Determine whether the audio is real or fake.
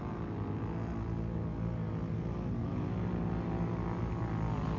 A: real